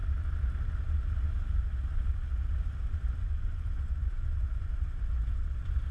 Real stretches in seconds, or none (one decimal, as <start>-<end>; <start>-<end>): 0.0-3.2; 4.7-5.9